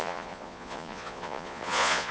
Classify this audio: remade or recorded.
remade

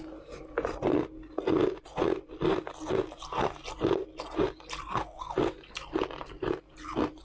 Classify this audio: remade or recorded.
recorded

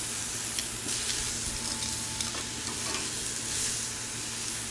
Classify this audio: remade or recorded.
recorded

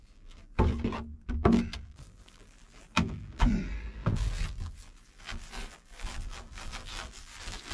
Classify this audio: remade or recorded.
remade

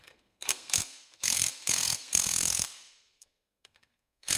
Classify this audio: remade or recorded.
remade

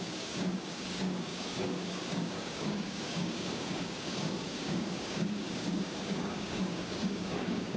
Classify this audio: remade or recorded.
remade